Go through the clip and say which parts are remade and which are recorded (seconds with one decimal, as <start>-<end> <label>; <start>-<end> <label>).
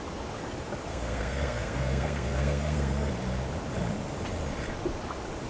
0.0-0.9 recorded; 0.9-3.1 remade; 3.1-5.5 recorded